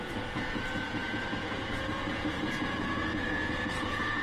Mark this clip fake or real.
fake